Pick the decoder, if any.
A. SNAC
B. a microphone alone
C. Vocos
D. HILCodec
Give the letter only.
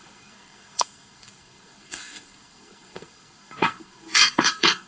A